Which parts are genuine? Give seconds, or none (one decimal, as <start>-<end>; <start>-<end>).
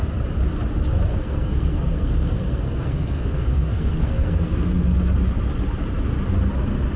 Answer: 0.0-1.1; 4.8-7.0